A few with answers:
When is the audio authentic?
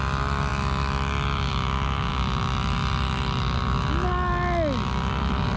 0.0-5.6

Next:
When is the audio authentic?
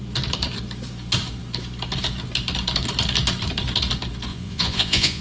0.0-4.3